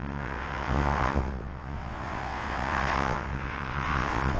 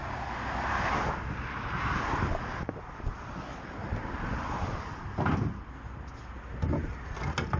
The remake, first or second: first